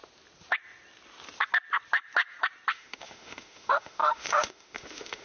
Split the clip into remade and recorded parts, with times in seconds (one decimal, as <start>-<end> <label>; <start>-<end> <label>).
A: 0.0-2.7 recorded; 2.7-5.2 remade